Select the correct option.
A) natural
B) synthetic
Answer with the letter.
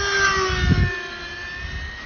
A